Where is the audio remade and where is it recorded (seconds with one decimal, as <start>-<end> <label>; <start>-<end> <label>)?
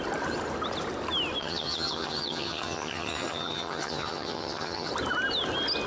0.0-1.4 recorded; 1.4-4.9 remade; 4.9-5.9 recorded